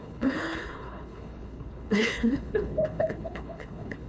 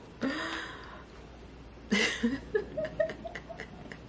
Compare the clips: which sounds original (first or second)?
second